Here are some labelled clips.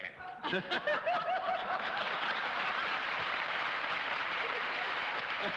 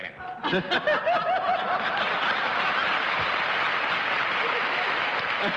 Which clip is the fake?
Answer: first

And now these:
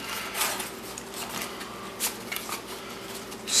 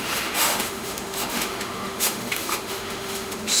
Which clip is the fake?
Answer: second